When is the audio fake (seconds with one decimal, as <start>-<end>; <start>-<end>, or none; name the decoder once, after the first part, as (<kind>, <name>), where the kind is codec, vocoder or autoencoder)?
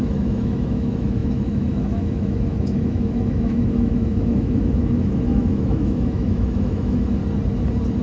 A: 0.0-7.2 (autoencoder, DAC-VAE)